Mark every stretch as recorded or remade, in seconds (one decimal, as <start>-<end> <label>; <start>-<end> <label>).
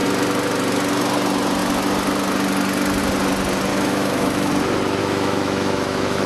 0.0-3.7 recorded; 3.7-4.5 remade; 4.5-5.0 recorded; 5.0-6.3 remade